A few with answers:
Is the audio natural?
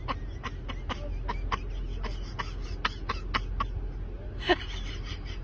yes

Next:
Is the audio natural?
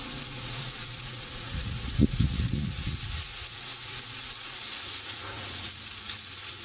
no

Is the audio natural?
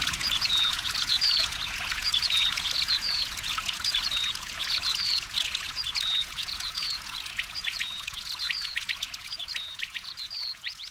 no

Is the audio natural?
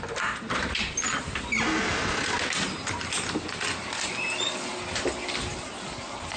yes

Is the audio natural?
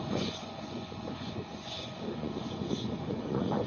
no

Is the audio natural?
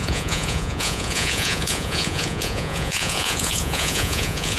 no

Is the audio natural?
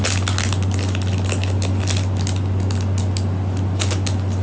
yes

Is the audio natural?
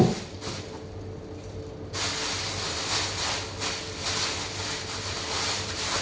yes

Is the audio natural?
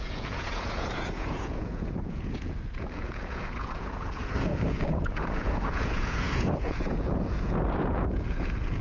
no